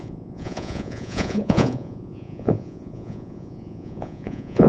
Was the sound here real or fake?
fake